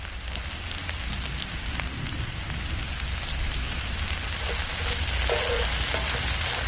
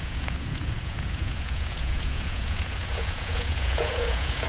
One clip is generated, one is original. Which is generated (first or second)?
second